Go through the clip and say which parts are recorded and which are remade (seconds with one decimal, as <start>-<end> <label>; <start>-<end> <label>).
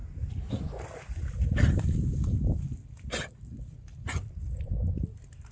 0.0-5.5 recorded